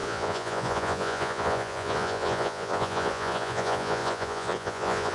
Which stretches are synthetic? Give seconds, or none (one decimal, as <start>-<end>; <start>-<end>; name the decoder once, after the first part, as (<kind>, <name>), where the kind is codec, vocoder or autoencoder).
0.0-5.1 (vocoder, Vocos)